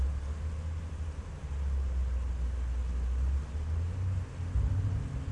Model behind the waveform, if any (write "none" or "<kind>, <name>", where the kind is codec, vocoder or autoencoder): none